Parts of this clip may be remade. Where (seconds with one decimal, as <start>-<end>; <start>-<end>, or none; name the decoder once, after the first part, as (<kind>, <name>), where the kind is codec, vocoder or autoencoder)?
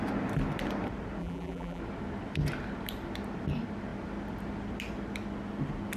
1.2-1.8 (vocoder, BigVGAN v2)